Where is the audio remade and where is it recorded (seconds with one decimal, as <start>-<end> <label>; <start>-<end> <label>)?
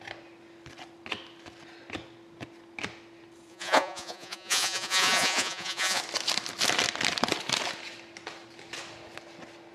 0.0-3.5 recorded; 3.5-6.0 remade; 6.0-9.7 recorded